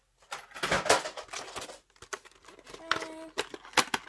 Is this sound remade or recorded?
recorded